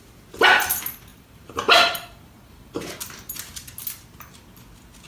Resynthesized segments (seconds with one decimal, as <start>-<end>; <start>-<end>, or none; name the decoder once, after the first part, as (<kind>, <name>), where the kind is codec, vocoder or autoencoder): 1.1-3.0 (vocoder, BigVGAN v2)